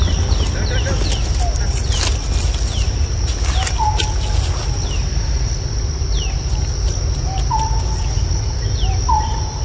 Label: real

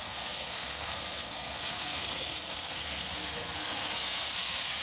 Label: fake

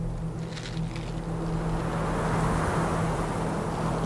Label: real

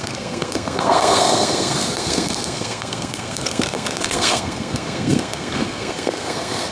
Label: fake